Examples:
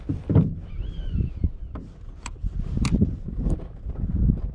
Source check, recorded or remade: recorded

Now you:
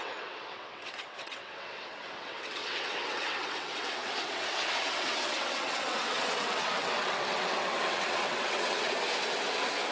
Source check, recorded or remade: remade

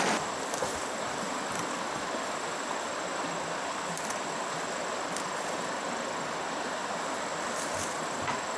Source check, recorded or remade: recorded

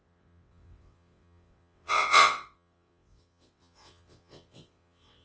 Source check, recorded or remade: remade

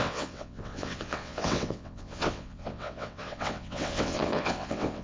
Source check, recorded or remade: remade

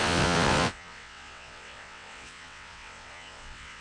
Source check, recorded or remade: remade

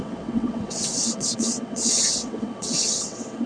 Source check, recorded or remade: remade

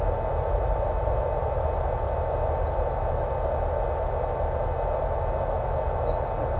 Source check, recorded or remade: recorded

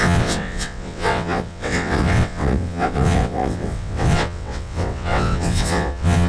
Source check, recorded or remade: remade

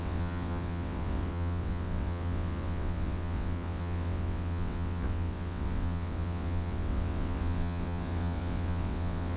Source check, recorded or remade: remade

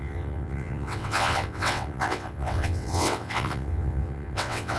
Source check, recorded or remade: remade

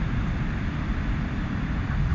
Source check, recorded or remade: recorded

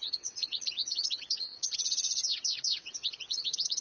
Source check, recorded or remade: remade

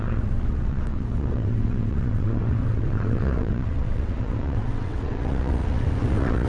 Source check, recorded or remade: remade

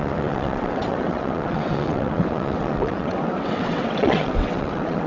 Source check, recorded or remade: remade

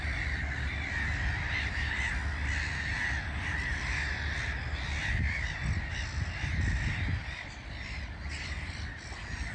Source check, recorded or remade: recorded